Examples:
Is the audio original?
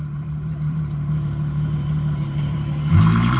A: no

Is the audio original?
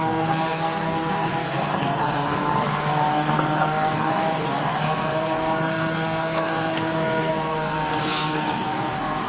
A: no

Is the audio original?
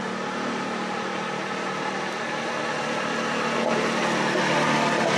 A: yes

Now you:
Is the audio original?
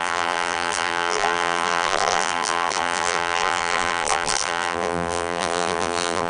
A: no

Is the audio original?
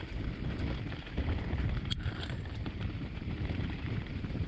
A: no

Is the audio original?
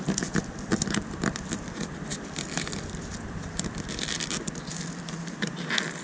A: no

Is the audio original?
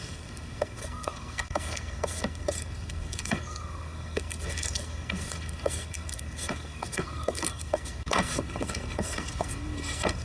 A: no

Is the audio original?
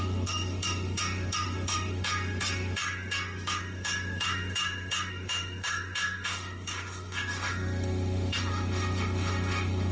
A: no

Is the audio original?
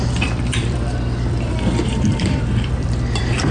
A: no